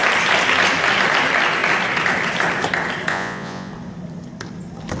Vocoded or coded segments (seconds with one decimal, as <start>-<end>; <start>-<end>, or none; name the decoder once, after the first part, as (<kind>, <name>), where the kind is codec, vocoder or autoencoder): 3.1-3.7 (vocoder, Vocos)